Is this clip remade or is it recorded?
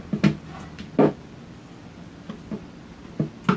recorded